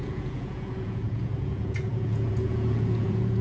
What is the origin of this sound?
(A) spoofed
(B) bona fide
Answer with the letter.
A